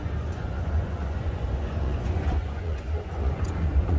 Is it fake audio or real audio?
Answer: fake